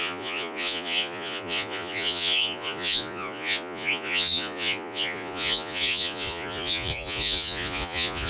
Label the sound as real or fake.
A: fake